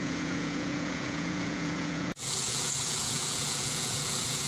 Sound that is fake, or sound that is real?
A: fake